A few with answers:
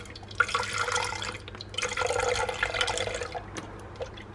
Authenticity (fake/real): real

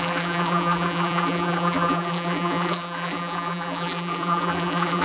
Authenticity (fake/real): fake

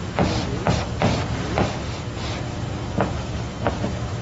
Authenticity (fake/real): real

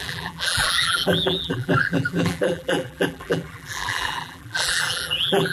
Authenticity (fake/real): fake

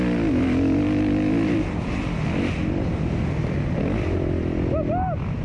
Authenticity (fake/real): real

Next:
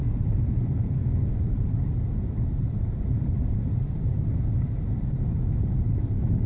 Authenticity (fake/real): fake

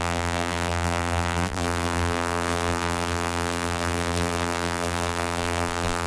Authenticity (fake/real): fake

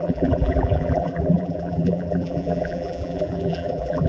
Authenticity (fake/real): fake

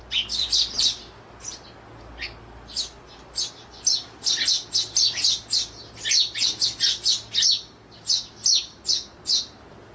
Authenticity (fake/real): real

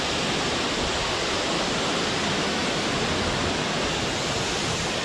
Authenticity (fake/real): real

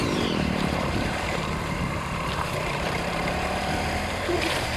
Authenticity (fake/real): fake